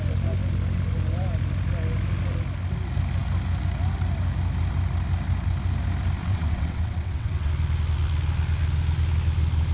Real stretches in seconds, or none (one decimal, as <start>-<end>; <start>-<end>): 0.0-6.2; 7.5-9.7